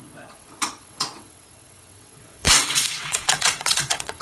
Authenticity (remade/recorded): remade